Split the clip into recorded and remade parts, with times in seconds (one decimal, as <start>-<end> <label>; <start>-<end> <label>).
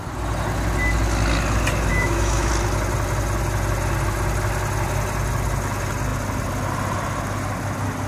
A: 0.0-1.9 recorded; 1.9-2.5 remade; 2.5-8.1 recorded